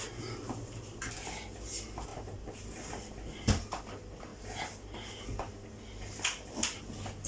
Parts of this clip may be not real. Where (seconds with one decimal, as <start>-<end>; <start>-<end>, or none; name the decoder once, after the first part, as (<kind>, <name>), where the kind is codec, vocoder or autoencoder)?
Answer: none